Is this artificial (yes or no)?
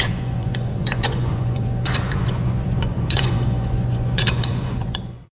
yes